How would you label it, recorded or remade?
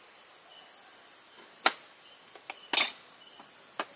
recorded